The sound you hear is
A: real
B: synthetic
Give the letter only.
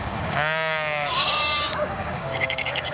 B